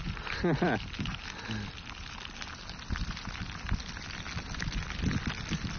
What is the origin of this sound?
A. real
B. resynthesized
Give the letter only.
A